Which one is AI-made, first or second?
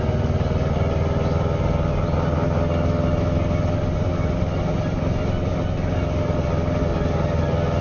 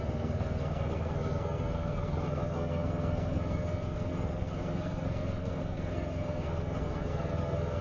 second